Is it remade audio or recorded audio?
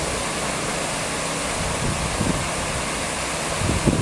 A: recorded